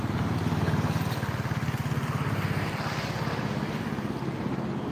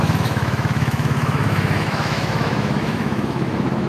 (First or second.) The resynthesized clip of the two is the second